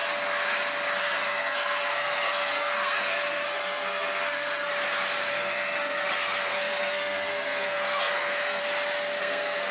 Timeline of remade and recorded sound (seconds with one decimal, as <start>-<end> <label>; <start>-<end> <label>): 0.0-1.0 recorded; 1.0-4.7 remade; 4.7-5.3 recorded; 5.3-8.6 remade; 8.6-9.2 recorded; 9.2-9.7 remade